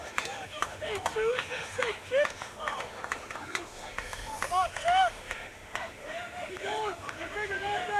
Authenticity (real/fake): fake